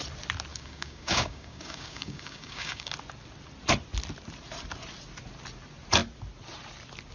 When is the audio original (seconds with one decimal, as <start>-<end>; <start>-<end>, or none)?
0.0-0.5; 2.9-7.1